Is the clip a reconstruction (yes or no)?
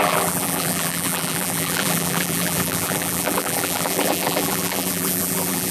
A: yes